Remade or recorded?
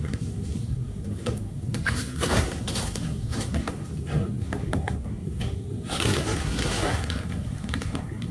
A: remade